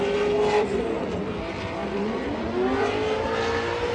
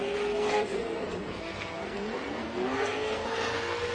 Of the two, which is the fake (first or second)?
second